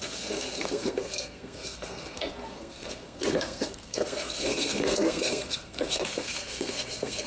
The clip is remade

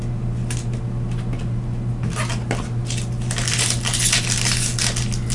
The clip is recorded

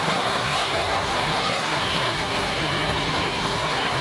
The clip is remade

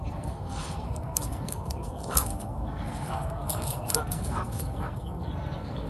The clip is remade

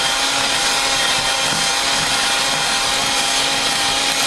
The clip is recorded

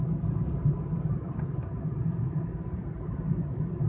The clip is recorded